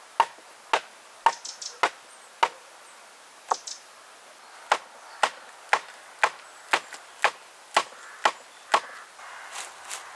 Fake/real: real